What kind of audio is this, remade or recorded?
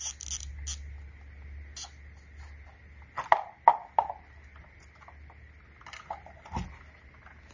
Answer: recorded